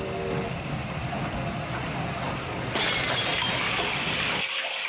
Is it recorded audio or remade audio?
recorded